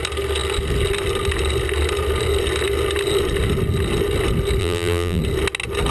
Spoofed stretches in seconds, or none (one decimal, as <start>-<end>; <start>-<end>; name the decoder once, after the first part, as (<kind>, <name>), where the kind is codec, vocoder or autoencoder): 4.6-5.2 (vocoder, BigVGAN v2)